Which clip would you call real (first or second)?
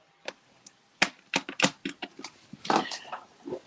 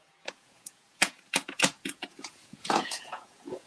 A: first